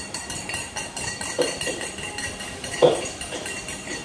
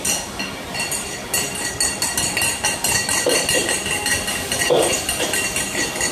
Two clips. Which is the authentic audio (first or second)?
second